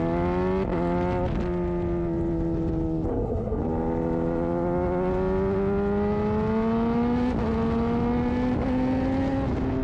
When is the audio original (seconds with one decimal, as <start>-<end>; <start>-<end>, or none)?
0.0-3.1; 3.6-9.8